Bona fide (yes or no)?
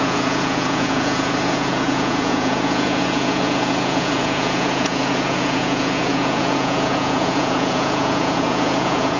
no